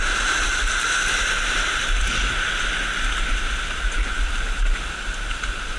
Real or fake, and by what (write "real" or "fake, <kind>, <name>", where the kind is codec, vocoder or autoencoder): real